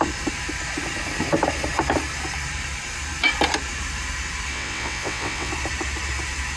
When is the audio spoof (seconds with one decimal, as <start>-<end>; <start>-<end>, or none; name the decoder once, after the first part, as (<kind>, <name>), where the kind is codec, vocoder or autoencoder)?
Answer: 4.5-5.5 (vocoder, WaveNeXt)